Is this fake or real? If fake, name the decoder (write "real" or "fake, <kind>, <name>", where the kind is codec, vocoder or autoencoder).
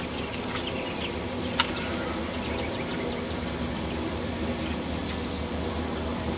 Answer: real